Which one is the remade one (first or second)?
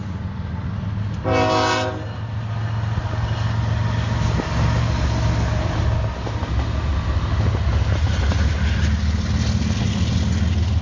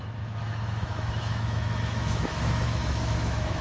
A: second